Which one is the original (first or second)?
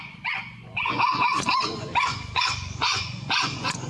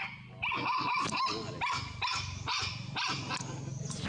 second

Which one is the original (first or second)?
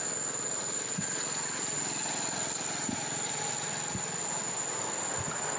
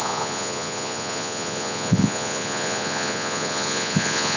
first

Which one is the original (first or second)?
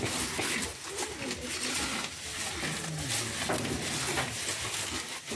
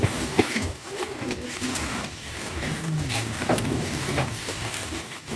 first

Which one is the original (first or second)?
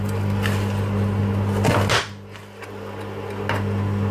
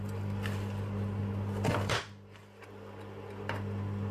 first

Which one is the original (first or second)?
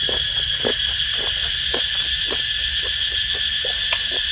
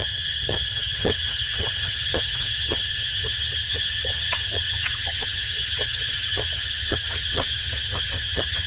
first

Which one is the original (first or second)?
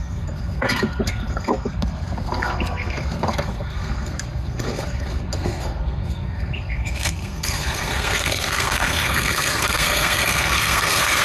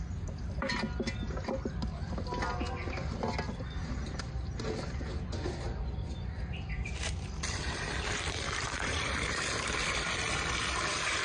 second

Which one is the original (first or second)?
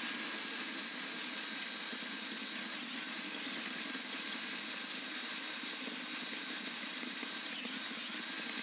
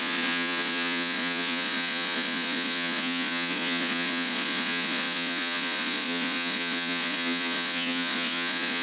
first